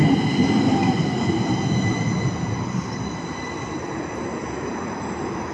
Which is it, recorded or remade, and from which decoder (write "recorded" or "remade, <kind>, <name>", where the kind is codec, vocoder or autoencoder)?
recorded